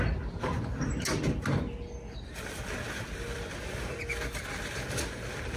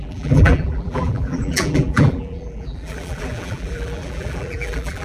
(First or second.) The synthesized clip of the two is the second